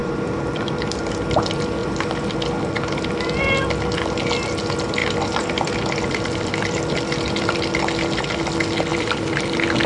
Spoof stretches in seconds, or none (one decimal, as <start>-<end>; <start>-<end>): 0.0-1.0; 1.8-3.6; 5.0-7.8; 8.9-9.5

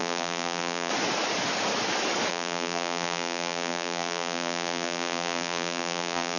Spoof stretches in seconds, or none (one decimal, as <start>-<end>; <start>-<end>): 0.0-0.9; 2.3-6.4